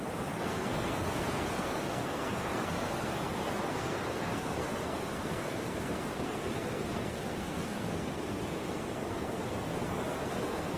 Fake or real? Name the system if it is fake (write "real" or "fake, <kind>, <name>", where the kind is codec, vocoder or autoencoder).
fake, codec, SNAC